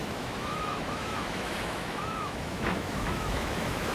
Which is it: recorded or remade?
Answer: remade